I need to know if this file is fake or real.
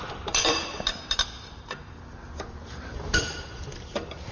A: fake